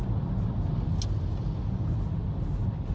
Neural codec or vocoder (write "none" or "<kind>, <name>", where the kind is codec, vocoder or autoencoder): none